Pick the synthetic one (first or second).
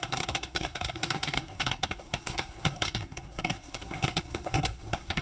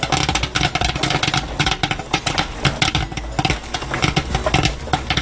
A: first